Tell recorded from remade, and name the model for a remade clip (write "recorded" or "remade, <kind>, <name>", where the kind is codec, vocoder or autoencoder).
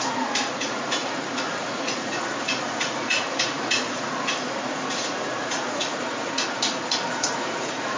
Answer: remade, vocoder, Vocos